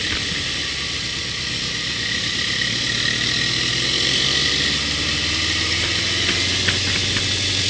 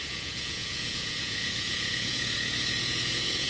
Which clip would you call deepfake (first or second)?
second